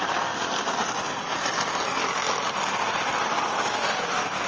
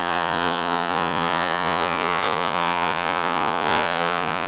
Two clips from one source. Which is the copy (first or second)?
second